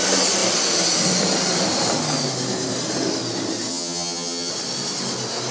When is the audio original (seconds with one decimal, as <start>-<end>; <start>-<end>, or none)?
0.0-3.7; 4.5-5.5